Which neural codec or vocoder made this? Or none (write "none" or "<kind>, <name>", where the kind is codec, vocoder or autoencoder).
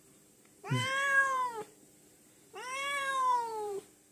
vocoder, BigVGAN v2